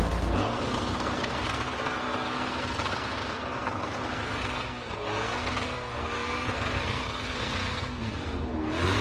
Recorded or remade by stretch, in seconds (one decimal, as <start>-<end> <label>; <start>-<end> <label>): 0.0-9.0 remade